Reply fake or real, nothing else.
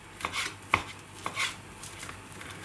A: real